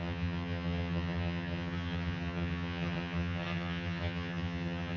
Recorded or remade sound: remade